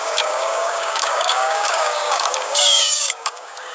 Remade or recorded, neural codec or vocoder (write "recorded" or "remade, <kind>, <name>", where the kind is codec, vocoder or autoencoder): remade, codec, DAC